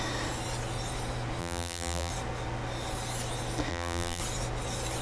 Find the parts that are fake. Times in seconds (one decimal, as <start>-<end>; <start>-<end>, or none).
1.4-2.1; 3.7-4.2